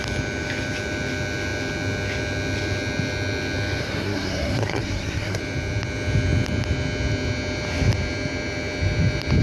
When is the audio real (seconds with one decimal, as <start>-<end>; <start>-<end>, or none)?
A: 0.0-3.8; 5.4-9.4